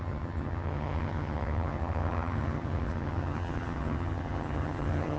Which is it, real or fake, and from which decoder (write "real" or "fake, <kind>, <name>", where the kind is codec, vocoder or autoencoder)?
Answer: fake, vocoder, HiFi-GAN